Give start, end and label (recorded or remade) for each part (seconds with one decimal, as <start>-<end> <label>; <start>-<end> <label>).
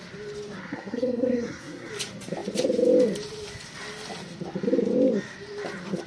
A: 0.0-0.6 recorded; 0.6-1.9 remade; 1.9-6.1 recorded